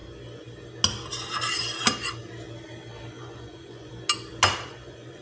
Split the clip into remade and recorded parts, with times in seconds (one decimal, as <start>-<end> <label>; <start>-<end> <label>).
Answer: 0.0-3.1 recorded; 3.1-3.9 remade; 3.9-4.7 recorded; 4.7-5.2 remade